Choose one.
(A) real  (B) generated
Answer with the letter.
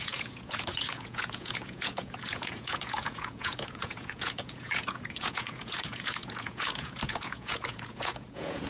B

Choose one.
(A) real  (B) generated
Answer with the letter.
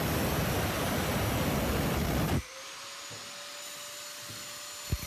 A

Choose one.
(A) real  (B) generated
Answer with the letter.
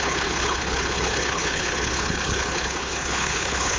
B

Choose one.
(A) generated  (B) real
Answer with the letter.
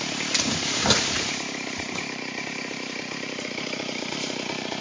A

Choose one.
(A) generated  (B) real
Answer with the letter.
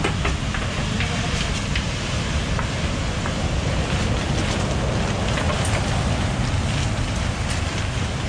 B